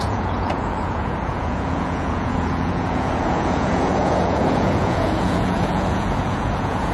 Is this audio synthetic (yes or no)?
yes